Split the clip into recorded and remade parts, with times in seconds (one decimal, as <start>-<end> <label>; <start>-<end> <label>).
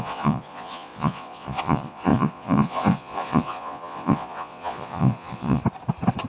0.0-5.6 remade; 5.6-6.3 recorded